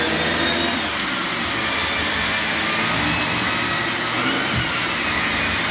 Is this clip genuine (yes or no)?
yes